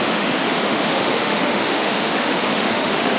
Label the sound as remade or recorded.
remade